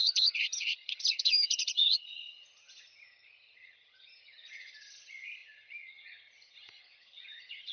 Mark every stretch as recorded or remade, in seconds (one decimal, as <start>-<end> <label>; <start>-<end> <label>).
0.0-7.7 remade